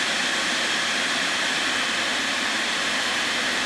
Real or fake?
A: fake